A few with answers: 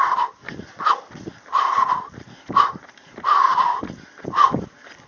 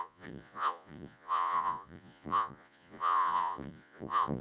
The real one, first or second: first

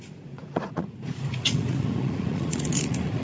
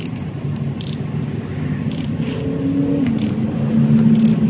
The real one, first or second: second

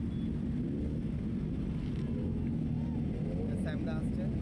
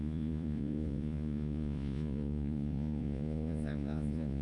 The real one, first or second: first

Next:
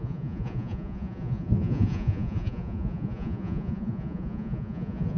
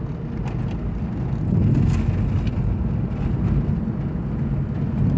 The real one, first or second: second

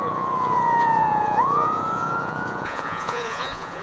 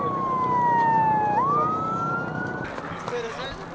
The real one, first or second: second